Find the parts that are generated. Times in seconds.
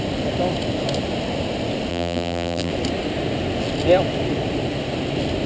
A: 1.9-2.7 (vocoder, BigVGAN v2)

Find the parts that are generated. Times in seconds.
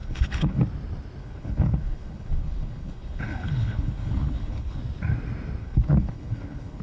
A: 0.0-0.6 (codec, HILCodec); 1.2-4.8; 5.6-6.8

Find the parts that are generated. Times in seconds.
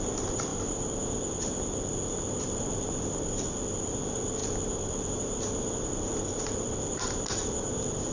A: 0.0-0.5 (vocoder, BigVGAN v2); 2.4-8.1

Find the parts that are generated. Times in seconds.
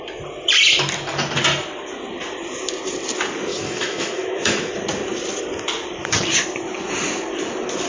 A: 3.5-4.7 (autoencoder, DAC-VAE)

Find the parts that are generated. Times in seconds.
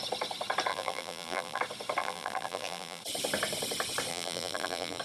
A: 0.7-1.6 (vocoder, BigVGAN v2); 2.0-3.0; 4.1-5.0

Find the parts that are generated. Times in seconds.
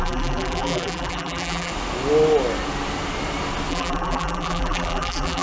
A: 0.0-1.7 (vocoder, BigVGAN v2); 3.7-5.4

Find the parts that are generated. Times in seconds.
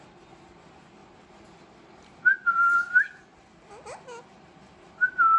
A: 0.0-1.0 (vocoder, BigVGAN v2); 4.2-5.4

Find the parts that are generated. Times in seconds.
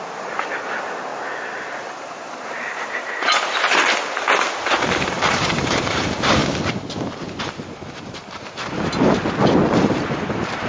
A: 0.0-1.1 (vocoder, BigVGAN v2); 1.8-6.4; 7.4-9.2; 9.8-10.7